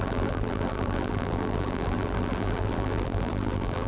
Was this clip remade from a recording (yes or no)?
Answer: yes